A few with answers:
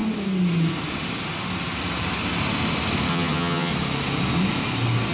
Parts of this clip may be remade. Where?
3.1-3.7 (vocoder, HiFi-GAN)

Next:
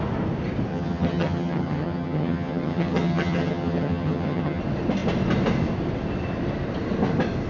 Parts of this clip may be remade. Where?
0.7-4.6 (vocoder, HiFi-GAN)

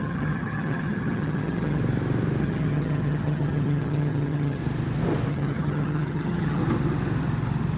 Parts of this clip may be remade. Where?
0.0-1.8 (vocoder, HiFi-GAN); 2.4-4.6; 5.3-6.6

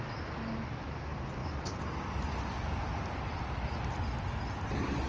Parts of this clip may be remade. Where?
none

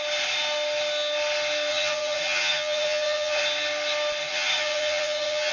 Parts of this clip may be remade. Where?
1.7-3.4 (vocoder, HiFi-GAN); 4.2-5.5

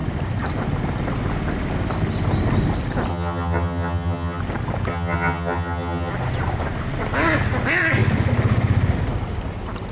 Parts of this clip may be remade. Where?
3.1-4.4 (vocoder, HiFi-GAN); 4.9-6.1

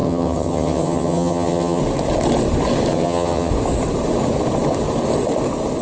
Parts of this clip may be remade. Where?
0.0-1.8 (vocoder, HiFi-GAN); 2.9-3.5